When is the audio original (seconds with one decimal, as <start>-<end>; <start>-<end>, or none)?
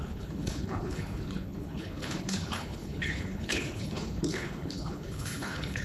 none